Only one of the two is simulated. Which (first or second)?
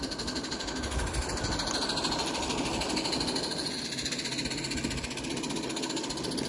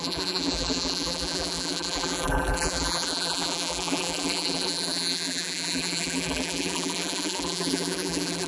second